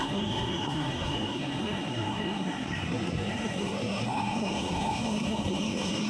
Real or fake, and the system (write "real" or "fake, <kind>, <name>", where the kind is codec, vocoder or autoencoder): fake, codec, SNAC